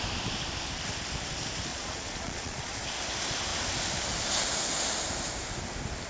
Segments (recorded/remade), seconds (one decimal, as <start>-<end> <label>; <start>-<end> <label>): 0.0-1.7 recorded; 1.7-2.7 remade; 2.7-6.1 recorded